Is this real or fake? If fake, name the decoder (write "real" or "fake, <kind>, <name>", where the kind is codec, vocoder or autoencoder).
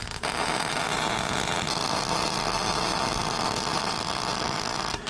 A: real